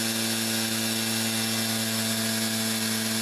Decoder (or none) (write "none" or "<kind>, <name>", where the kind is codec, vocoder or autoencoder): none